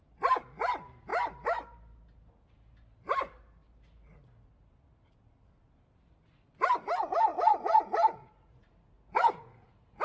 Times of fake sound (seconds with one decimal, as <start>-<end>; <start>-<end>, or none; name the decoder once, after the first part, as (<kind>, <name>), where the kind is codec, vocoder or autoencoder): 7.3-10.0 (vocoder, Vocos)

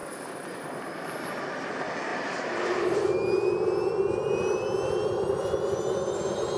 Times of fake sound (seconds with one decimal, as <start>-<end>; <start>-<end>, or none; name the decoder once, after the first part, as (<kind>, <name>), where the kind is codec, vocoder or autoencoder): none